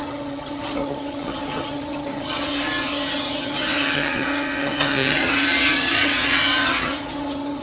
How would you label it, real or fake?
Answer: fake